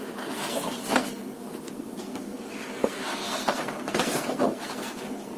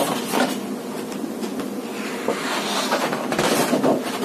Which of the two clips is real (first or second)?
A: second